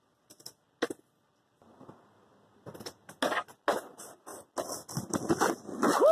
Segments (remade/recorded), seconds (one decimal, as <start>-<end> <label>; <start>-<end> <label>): 0.0-6.1 recorded

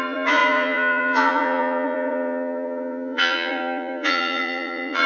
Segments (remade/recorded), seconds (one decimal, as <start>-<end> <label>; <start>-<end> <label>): 0.0-5.1 remade